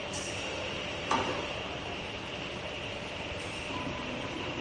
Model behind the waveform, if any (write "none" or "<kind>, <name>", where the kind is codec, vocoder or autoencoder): vocoder, BigVGAN v2